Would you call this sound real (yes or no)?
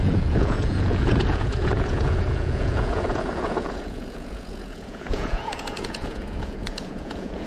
no